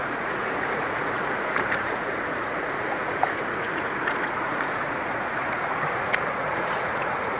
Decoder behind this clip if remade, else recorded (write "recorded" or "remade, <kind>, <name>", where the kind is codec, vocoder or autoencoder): remade, vocoder, Vocos